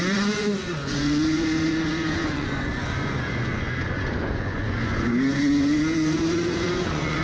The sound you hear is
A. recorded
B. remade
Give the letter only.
B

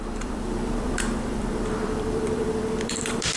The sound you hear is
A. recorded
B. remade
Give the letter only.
B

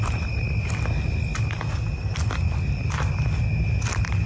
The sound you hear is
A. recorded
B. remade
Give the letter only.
A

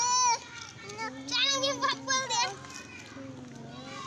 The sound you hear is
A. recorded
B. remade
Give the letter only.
A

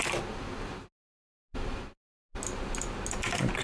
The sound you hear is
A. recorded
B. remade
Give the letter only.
A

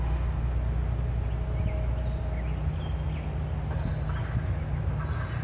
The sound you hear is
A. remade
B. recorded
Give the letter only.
B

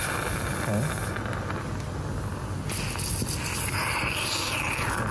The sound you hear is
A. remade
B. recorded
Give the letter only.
B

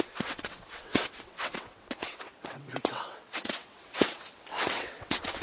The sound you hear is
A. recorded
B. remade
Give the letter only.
B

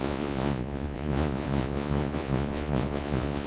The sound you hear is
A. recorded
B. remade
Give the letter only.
B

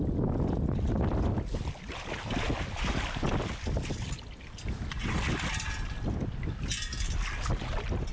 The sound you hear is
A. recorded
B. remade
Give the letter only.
A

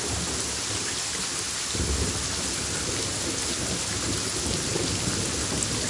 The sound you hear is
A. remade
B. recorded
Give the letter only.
B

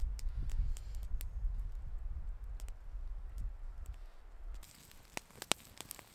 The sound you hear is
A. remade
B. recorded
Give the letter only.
B